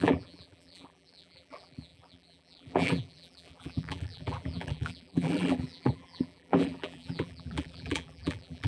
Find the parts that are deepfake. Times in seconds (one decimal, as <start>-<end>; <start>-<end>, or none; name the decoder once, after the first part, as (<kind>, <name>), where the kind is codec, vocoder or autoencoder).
0.0-8.7 (vocoder, BigVGAN v2)

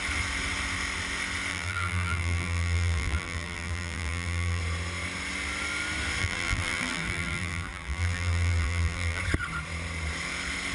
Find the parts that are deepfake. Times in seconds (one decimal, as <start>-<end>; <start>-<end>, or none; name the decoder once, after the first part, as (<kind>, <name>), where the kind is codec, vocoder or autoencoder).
1.5-4.6 (vocoder, BigVGAN v2); 6.2-9.2

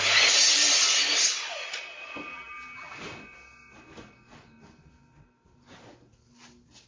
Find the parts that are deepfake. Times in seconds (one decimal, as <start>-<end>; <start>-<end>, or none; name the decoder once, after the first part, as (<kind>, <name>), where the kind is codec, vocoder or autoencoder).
2.3-2.9 (vocoder, BigVGAN v2)

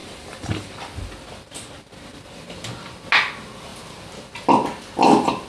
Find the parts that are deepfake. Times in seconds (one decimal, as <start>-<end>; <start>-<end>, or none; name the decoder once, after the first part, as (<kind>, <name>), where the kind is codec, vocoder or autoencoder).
0.0-0.7 (vocoder, BigVGAN v2)

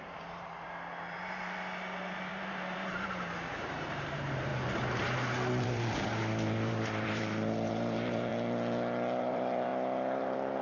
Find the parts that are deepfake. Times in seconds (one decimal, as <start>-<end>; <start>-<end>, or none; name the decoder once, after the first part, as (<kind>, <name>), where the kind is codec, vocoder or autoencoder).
0.0-4.5 (vocoder, BigVGAN v2); 5.6-8.3; 9.2-9.7; 10.2-10.6

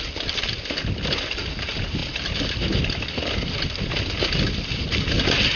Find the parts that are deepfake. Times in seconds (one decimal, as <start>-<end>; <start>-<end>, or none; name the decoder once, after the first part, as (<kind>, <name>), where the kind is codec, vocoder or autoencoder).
none